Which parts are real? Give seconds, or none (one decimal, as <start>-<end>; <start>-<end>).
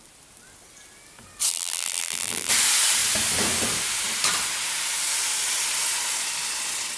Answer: 0.0-1.5; 2.5-7.0